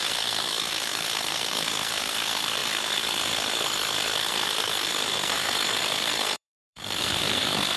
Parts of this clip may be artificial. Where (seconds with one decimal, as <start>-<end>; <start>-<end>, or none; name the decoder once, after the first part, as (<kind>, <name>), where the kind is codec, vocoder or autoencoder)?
0.0-7.8 (codec, SNAC)